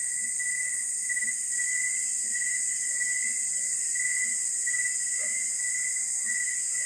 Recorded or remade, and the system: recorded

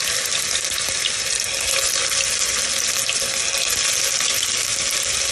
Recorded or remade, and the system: recorded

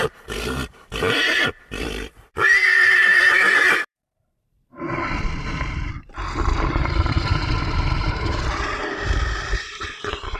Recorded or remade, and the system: remade, vocoder, BigVGAN v2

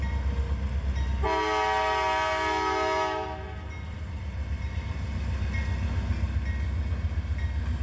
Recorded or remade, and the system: recorded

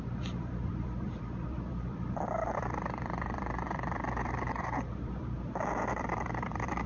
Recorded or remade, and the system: remade, vocoder, BigVGAN v2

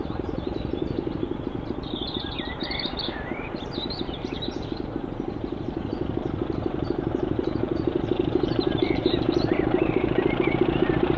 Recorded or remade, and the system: remade, vocoder, BigVGAN v2